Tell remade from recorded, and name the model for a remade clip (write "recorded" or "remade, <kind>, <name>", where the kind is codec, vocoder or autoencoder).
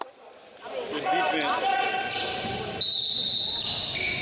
recorded